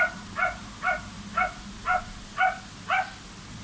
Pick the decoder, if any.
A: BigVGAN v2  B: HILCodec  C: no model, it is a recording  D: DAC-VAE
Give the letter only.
C